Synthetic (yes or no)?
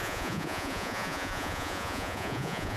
yes